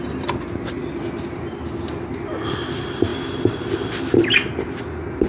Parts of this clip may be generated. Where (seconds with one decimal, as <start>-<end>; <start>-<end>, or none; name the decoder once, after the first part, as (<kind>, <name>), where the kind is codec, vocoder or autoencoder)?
none